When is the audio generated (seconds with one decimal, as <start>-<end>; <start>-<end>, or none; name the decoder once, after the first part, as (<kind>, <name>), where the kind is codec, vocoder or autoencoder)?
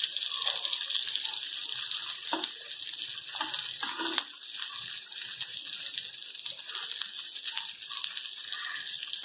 none